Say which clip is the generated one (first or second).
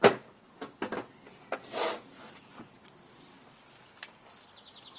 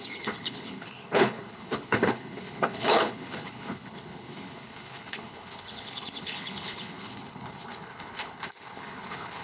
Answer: second